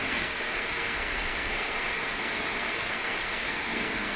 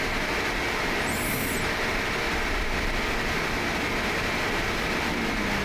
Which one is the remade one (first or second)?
first